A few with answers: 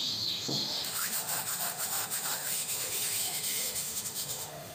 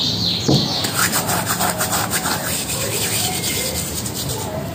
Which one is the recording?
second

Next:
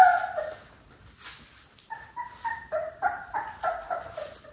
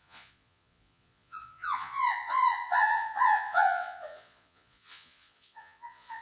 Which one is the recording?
first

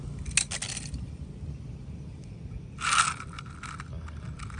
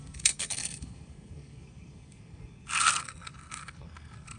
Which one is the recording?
first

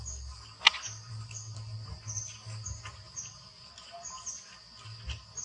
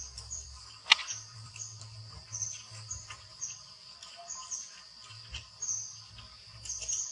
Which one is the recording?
first